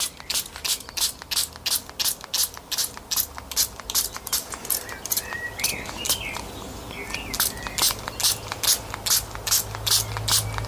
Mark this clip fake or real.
real